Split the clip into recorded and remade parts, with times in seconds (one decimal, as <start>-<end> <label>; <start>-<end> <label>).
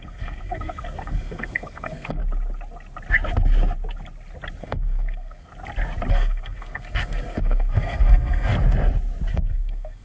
0.0-2.2 remade; 2.2-4.6 recorded; 4.6-5.5 remade; 5.5-6.1 recorded; 6.1-8.5 remade; 8.5-9.3 recorded; 9.3-10.0 remade